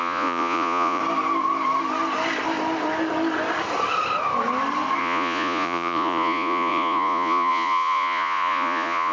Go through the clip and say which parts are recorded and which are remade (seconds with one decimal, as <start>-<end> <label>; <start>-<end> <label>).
0.0-1.0 remade; 1.0-5.0 recorded; 5.0-9.1 remade